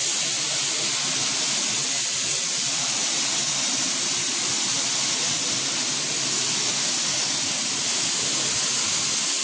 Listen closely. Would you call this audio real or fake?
real